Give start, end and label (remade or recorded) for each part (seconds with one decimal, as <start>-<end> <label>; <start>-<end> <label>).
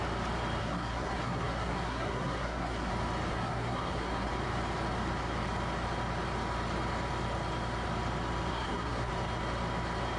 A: 0.0-0.6 recorded; 0.6-2.9 remade; 2.9-3.3 recorded; 3.3-4.3 remade; 4.3-8.5 recorded; 8.5-9.1 remade; 9.1-10.2 recorded